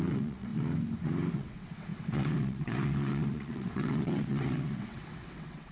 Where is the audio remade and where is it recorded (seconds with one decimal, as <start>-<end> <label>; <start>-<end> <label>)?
0.0-0.5 remade; 0.5-1.3 recorded; 1.3-5.7 remade